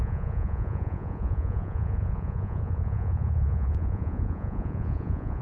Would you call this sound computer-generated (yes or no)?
yes